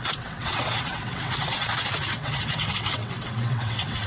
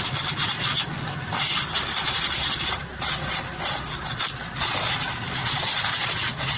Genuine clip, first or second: second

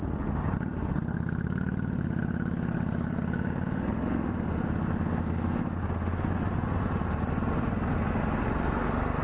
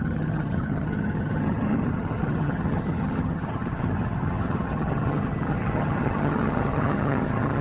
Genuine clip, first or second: first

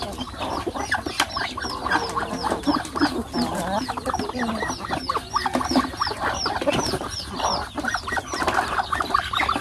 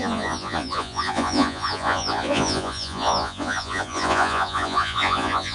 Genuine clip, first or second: first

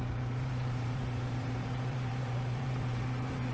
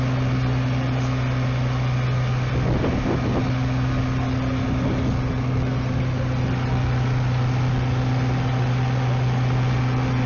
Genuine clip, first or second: second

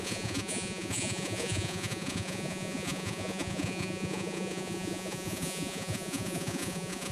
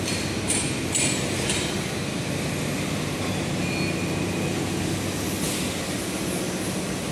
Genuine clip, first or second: second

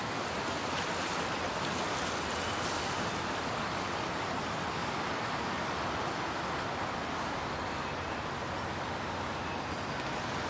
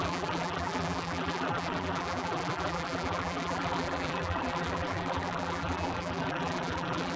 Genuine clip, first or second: first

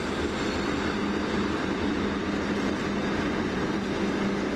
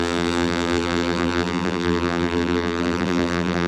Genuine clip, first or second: first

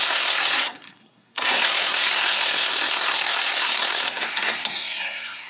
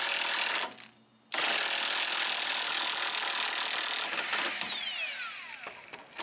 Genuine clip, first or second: second